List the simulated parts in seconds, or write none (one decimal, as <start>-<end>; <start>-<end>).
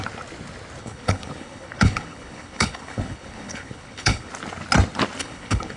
0.8-4.3; 5.2-5.8